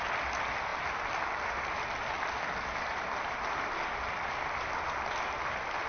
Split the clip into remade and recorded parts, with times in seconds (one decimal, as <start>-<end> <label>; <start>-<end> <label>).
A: 0.0-5.9 recorded